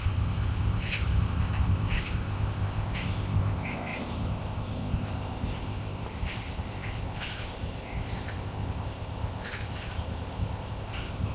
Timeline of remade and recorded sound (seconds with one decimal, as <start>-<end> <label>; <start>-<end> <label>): 0.0-11.3 remade